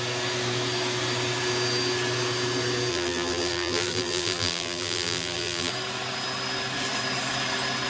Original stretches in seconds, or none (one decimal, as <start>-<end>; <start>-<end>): 0.0-2.9; 5.7-7.9